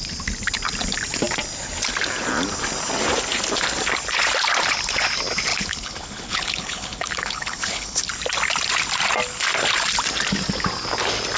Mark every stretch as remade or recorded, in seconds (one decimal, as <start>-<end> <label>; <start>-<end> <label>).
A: 0.0-5.5 recorded; 5.5-8.1 remade; 8.1-11.4 recorded